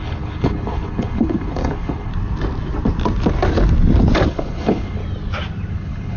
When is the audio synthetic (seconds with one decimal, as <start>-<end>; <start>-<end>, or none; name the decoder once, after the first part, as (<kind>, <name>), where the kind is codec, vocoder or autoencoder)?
0.0-2.1 (codec, HILCodec); 4.3-5.0; 5.7-6.2